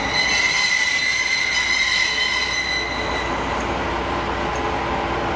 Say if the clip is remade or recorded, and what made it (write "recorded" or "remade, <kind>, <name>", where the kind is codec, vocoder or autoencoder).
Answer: recorded